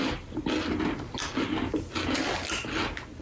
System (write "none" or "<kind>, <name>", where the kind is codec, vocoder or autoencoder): none